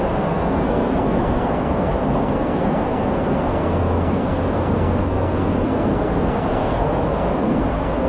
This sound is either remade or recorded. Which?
remade